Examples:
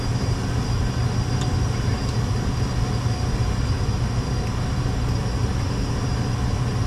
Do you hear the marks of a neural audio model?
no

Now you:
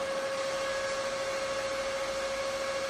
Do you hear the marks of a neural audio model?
no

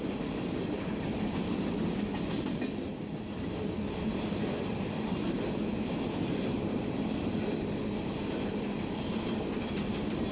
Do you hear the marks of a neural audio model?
no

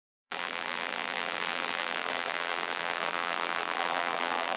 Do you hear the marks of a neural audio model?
yes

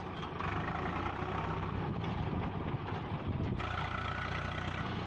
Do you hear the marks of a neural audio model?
no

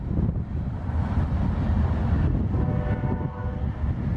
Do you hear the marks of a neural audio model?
no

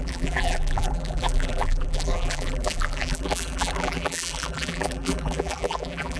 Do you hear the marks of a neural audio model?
yes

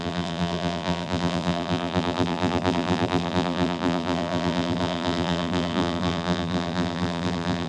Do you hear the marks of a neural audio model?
yes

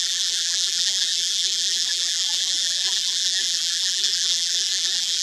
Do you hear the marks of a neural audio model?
yes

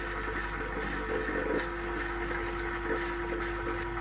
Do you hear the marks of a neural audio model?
no